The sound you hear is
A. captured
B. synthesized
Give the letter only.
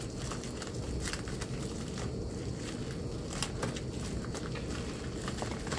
A